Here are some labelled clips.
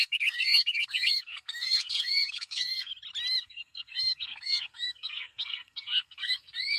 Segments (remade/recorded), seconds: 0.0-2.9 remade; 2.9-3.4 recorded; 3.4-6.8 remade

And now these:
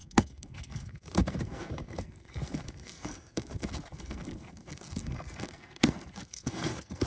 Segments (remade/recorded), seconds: 0.0-7.1 remade

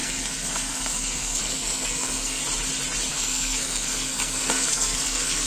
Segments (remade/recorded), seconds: 0.0-2.4 remade; 2.4-3.1 recorded; 3.1-5.5 remade

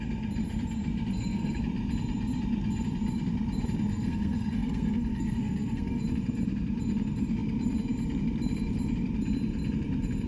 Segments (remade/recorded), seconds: 0.0-1.1 recorded; 1.1-1.6 remade; 1.6-3.9 recorded; 3.9-6.0 remade; 6.0-10.3 recorded

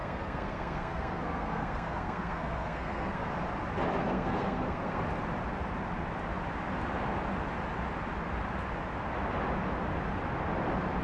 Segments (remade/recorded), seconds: 0.0-3.3 remade; 3.3-4.0 recorded; 4.0-5.0 remade; 5.0-11.0 recorded

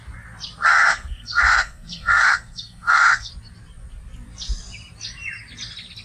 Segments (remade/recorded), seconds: 0.0-0.7 recorded; 0.7-3.3 remade; 3.3-6.0 recorded

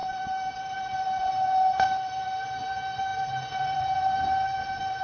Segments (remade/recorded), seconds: 0.0-5.0 recorded

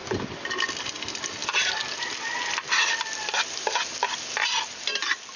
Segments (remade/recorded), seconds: 0.0-5.4 recorded